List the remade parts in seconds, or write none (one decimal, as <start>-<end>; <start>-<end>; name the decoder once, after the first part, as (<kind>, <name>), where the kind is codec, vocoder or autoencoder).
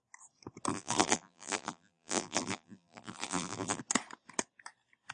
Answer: 0.7-3.8 (vocoder, BigVGAN v2)